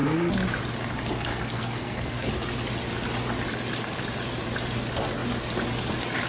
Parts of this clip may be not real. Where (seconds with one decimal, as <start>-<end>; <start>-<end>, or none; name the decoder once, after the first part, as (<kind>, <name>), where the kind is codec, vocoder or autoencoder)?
1.3-2.3 (codec, SNAC)